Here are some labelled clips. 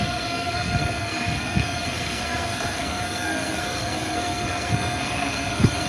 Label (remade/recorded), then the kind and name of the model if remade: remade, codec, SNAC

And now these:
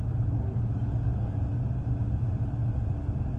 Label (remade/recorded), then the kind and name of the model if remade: recorded